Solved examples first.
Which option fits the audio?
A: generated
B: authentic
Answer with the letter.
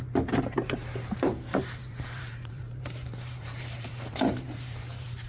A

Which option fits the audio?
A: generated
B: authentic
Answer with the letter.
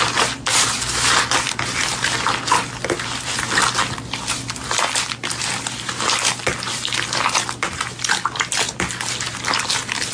B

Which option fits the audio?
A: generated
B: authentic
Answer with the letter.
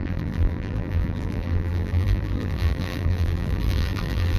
A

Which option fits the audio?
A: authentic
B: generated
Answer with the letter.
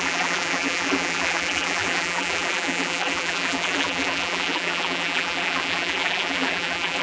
B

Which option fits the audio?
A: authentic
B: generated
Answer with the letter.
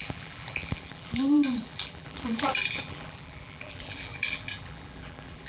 B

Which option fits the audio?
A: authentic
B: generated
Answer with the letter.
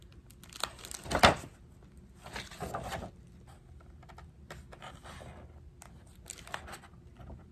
A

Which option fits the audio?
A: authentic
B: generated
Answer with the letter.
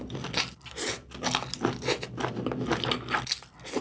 A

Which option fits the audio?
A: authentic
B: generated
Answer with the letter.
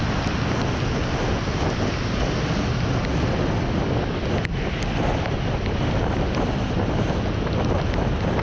A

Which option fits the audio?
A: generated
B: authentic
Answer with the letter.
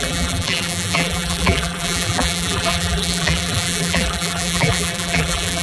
A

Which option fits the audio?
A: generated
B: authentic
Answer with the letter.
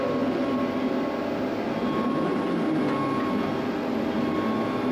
B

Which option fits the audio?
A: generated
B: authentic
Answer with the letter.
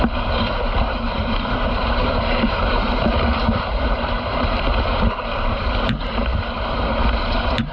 A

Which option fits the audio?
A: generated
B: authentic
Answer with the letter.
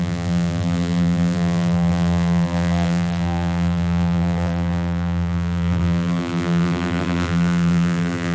A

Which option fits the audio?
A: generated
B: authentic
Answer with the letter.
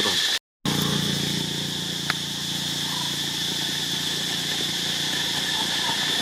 B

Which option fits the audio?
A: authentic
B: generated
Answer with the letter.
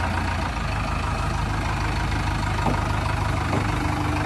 A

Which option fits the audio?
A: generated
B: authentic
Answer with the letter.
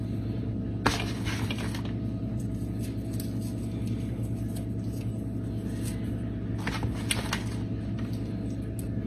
B